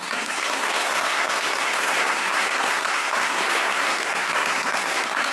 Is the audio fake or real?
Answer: fake